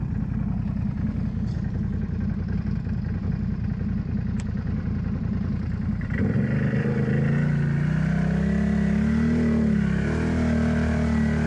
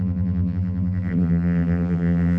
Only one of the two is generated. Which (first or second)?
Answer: second